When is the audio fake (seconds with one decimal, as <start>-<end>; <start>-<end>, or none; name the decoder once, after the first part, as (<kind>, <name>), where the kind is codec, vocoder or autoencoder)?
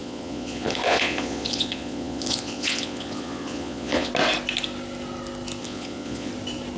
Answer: 0.0-4.1 (vocoder, Vocos); 5.6-6.3